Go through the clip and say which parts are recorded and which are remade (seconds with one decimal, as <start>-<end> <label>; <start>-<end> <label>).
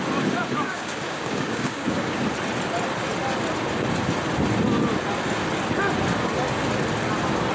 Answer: 0.0-0.4 recorded; 0.4-2.2 remade; 2.2-7.5 recorded